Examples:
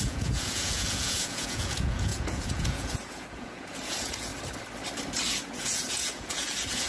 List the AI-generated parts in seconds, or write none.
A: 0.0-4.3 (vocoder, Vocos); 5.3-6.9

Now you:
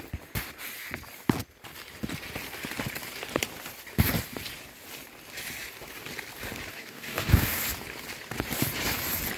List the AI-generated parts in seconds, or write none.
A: 6.7-7.6 (codec, DAC)

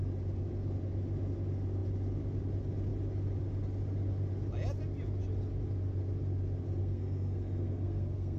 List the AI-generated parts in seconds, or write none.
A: 6.8-8.4 (codec, SNAC)

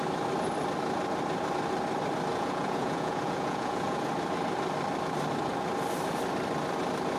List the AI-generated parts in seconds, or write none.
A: 2.3-4.1 (vocoder, Vocos)

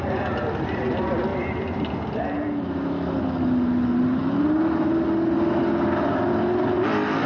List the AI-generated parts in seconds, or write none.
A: none

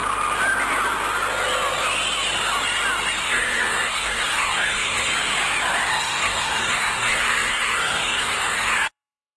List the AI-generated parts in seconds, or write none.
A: 3.2-5.1 (codec, SNAC); 5.9-9.4